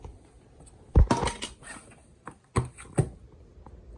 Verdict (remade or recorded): recorded